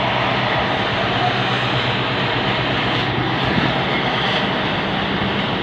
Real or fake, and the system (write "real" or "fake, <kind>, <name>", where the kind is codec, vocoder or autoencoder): real